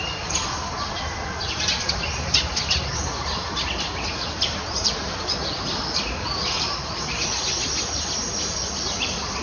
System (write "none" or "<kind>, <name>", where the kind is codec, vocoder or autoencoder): vocoder, BigVGAN v2